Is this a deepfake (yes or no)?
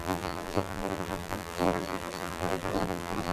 yes